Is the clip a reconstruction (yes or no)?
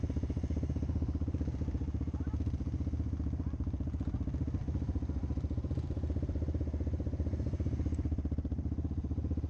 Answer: no